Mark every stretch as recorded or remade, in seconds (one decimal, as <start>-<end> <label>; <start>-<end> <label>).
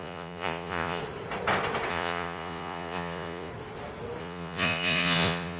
0.0-1.0 remade; 1.0-1.9 recorded; 1.9-3.5 remade; 3.5-4.2 recorded; 4.2-5.6 remade